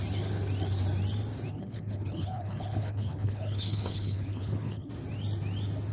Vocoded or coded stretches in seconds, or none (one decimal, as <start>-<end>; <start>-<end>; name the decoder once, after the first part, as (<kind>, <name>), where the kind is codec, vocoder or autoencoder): 1.5-4.9 (codec, HILCodec)